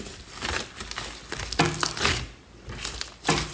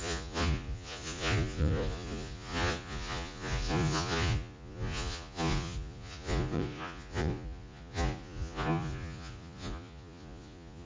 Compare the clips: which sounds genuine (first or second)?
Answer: first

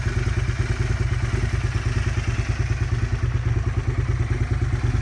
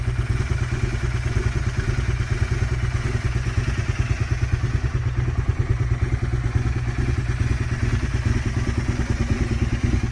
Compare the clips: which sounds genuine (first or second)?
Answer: first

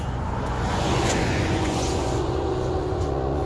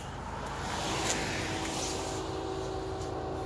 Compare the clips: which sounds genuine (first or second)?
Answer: second